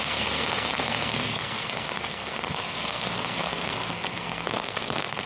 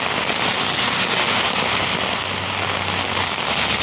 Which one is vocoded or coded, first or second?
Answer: first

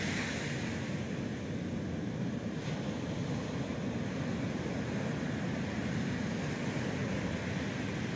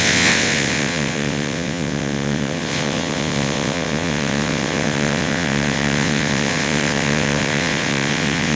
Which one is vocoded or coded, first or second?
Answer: second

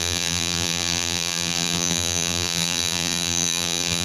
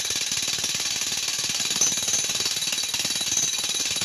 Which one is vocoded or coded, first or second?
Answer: first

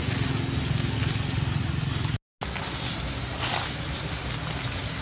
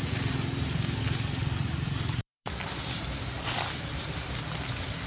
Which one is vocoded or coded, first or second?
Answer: second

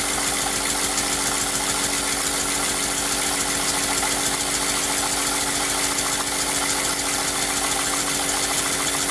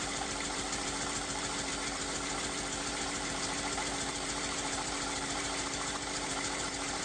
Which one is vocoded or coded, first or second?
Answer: second